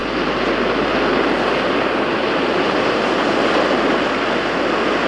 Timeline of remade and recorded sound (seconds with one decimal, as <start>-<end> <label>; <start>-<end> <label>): 0.0-5.1 recorded

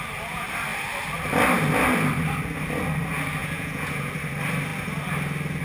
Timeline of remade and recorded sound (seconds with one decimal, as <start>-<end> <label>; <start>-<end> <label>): 0.0-3.4 recorded; 3.4-4.1 remade; 4.1-5.6 recorded

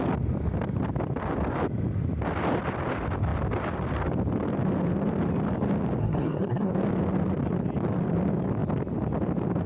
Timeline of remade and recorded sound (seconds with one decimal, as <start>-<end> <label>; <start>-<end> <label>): 0.0-6.0 recorded; 6.0-6.7 remade; 6.7-9.7 recorded

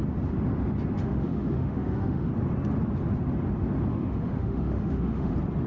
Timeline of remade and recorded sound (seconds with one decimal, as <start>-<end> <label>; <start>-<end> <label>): 0.0-1.0 recorded; 1.0-2.3 remade; 2.3-3.9 recorded; 3.9-5.3 remade; 5.3-5.7 recorded